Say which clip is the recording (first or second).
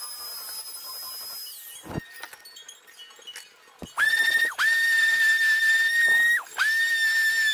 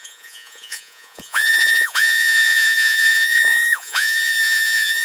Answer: first